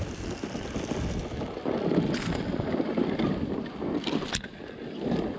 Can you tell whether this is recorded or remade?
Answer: recorded